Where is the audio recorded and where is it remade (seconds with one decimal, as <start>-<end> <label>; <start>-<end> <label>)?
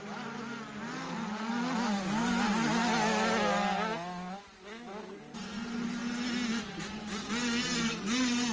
0.0-8.5 recorded